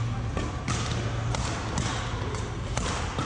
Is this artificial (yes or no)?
no